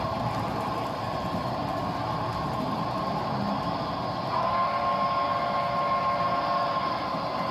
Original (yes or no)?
yes